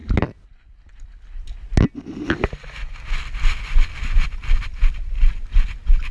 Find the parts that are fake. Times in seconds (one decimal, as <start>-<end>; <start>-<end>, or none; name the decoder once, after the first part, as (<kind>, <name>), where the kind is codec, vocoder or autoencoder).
none